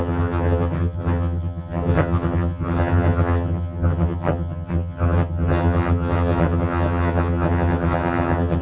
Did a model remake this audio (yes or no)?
yes